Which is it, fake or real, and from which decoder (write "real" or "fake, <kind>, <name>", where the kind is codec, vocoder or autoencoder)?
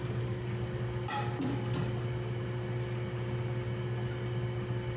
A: real